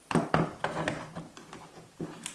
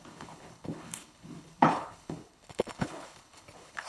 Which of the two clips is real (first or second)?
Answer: first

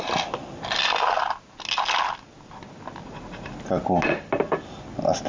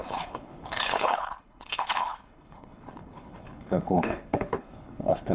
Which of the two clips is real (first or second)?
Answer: first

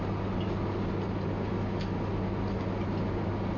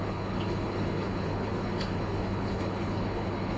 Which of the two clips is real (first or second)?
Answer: first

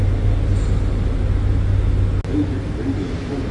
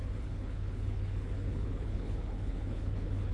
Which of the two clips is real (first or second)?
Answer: first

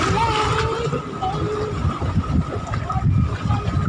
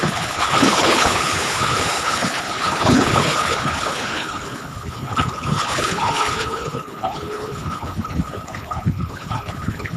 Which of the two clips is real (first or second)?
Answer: first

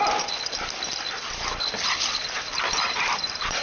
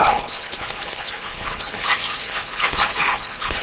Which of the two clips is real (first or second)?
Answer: first